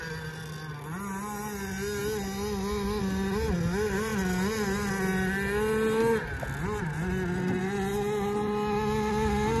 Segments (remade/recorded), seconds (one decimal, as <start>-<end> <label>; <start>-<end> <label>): 0.0-9.6 recorded